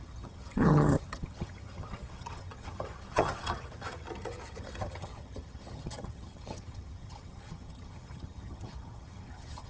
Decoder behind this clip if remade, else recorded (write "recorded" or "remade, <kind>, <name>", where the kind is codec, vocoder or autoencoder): remade, vocoder, HiFi-GAN